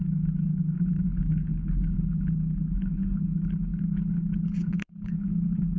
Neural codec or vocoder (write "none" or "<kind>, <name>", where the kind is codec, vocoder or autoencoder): codec, HILCodec